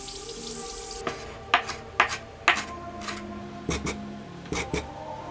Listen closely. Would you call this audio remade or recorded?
recorded